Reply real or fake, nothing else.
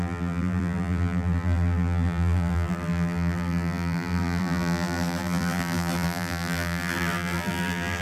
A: fake